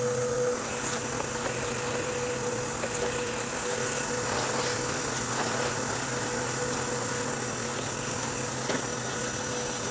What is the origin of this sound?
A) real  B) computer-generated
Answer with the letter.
A